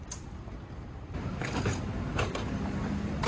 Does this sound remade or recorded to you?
recorded